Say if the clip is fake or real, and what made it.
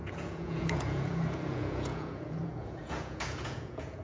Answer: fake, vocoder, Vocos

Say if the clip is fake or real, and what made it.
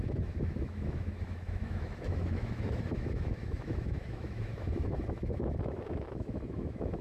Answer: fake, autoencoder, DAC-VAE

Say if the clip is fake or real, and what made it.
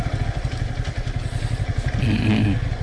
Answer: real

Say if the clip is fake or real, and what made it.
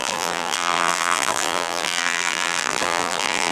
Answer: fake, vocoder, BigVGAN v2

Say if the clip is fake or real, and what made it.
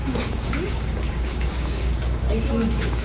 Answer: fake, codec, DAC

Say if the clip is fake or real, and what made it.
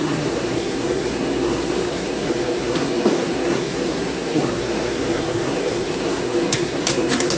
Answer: fake, codec, SNAC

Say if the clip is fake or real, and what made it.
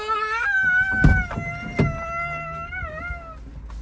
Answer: real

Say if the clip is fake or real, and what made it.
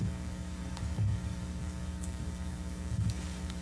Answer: fake, codec, DAC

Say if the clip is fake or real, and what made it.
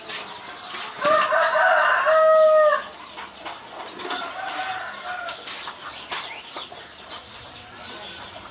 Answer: real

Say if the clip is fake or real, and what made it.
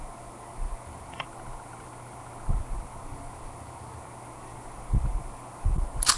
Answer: real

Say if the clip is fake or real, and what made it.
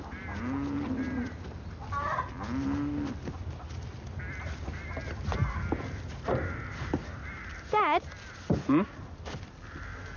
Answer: real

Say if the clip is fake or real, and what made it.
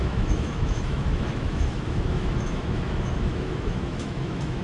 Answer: fake, autoencoder, DAC-VAE